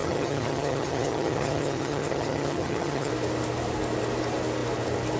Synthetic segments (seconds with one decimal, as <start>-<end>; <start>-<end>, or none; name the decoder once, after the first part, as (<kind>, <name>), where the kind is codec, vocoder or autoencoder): 0.0-3.1 (vocoder, HiFi-GAN)